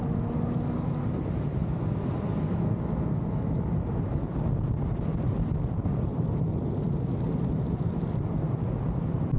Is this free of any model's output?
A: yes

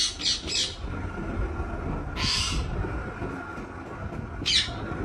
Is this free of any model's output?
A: yes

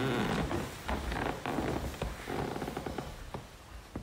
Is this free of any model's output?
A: yes